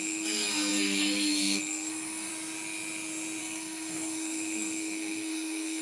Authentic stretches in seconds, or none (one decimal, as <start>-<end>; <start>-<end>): 2.3-3.4